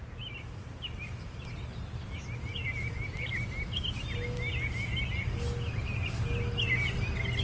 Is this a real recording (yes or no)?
yes